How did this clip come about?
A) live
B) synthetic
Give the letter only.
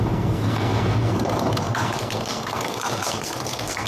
B